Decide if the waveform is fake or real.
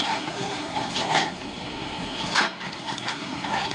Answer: fake